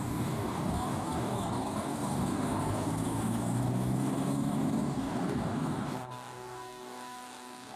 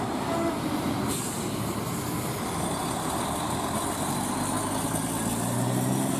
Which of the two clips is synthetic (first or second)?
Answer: first